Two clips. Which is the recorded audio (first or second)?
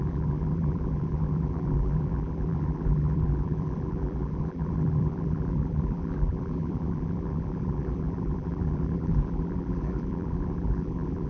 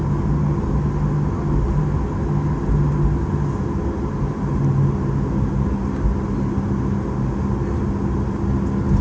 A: second